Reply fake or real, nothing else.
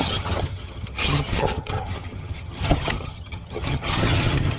fake